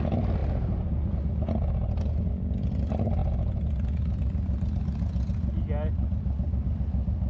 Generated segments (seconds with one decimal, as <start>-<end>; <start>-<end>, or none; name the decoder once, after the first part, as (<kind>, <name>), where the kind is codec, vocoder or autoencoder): none